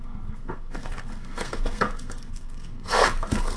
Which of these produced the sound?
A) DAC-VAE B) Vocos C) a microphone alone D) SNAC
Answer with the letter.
D